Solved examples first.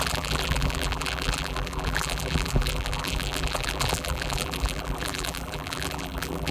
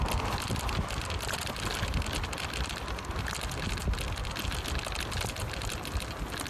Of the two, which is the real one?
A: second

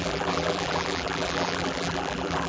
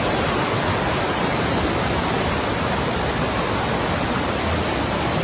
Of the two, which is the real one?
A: second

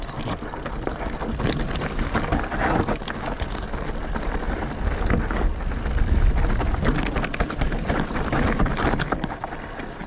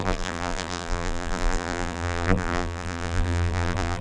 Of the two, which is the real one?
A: first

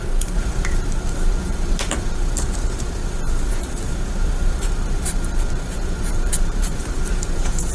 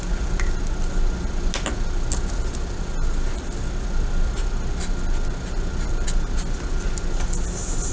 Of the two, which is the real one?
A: second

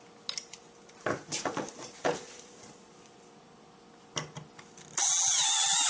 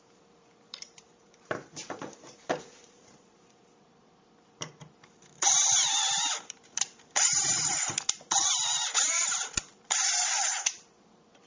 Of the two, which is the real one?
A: first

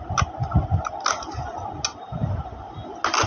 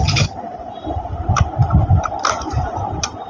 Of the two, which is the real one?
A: first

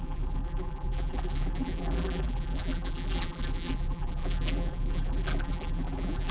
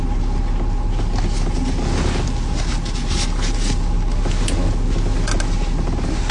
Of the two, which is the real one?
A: second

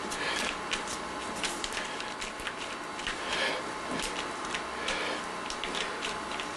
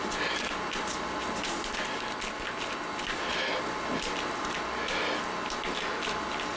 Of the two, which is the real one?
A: second